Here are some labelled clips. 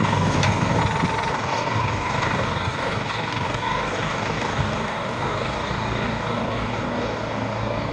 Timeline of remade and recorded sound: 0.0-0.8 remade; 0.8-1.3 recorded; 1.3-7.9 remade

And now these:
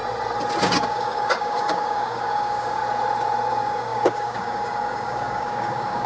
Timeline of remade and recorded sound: 0.0-0.6 recorded; 0.6-2.8 remade; 2.8-3.5 recorded; 3.5-6.1 remade

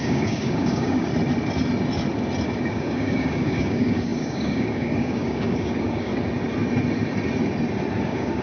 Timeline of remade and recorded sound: 0.0-1.1 remade; 1.1-2.7 recorded; 2.7-6.1 remade; 6.1-8.0 recorded; 8.0-8.4 remade

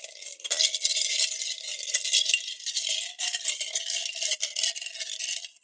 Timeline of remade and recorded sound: 0.0-5.6 recorded